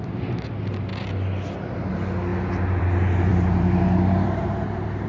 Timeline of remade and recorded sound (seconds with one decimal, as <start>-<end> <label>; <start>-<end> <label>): 0.0-3.3 recorded; 3.3-5.1 remade